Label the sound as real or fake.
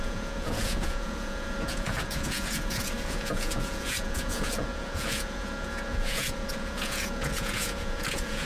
fake